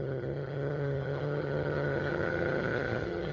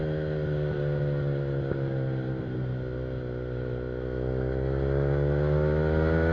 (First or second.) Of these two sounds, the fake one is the first